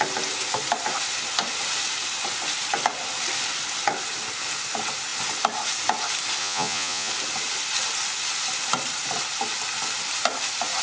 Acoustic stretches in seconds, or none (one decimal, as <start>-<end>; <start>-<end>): 0.0-6.4; 7.1-10.8